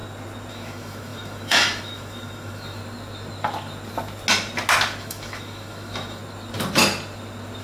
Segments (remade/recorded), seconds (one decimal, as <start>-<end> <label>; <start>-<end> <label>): 0.0-0.5 recorded; 0.5-2.8 remade; 2.8-5.0 recorded; 5.0-6.2 remade; 6.2-7.6 recorded